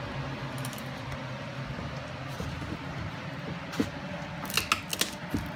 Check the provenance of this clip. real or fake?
real